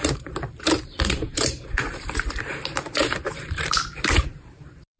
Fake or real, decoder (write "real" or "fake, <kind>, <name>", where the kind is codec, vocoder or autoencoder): fake, vocoder, BigVGAN v2